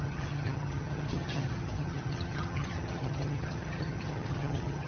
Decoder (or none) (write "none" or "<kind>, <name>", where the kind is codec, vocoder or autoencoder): vocoder, HiFi-GAN